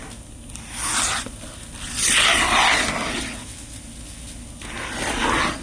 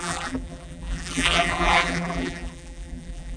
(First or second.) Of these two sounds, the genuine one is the first